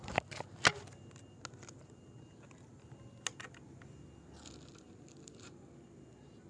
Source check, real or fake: real